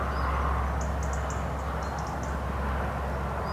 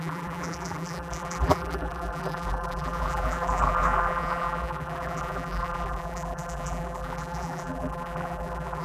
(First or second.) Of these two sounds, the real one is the first